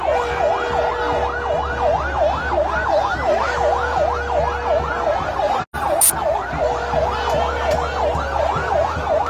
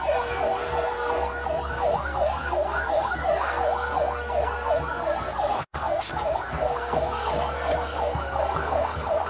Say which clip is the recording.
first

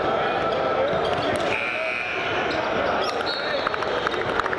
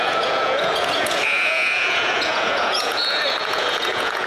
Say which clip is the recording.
first